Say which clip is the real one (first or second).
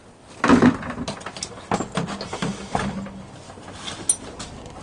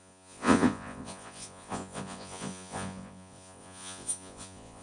first